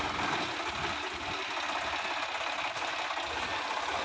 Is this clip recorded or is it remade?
recorded